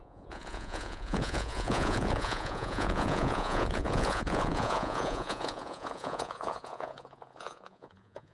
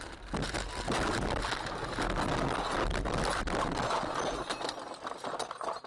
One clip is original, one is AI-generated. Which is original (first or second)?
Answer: second